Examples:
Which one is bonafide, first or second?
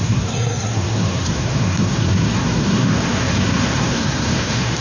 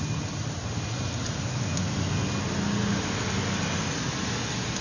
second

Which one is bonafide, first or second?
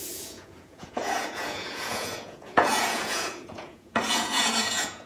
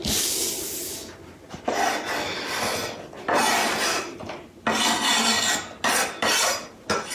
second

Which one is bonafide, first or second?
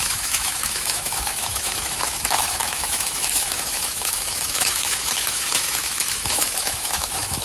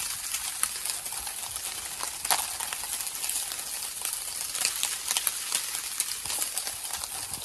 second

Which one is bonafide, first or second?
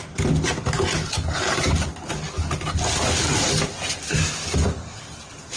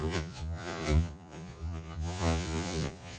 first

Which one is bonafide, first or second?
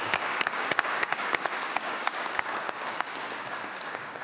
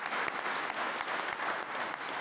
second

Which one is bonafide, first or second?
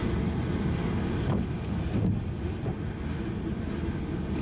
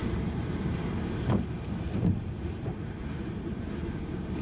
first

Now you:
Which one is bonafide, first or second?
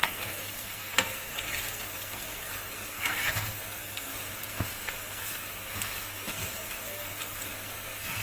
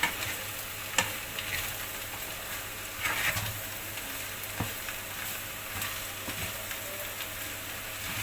second